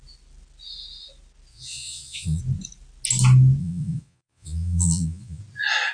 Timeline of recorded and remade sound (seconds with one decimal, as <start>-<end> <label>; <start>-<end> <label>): 0.0-1.5 recorded; 1.5-2.4 remade; 2.4-3.6 recorded; 3.6-5.4 remade; 5.4-5.9 recorded